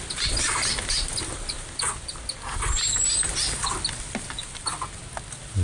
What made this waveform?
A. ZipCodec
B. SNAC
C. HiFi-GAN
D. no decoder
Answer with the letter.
D